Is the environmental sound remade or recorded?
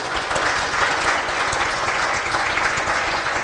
remade